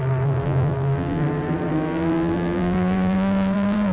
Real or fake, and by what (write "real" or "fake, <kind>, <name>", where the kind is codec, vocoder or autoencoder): fake, vocoder, BigVGAN v2